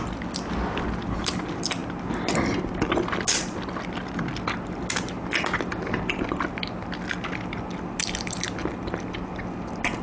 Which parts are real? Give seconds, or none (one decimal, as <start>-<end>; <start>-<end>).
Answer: 0.0-10.0